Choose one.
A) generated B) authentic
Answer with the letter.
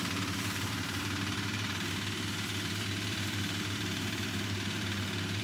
A